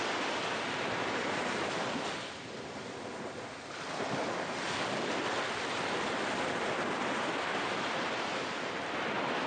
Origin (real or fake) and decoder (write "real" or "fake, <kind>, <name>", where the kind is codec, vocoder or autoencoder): real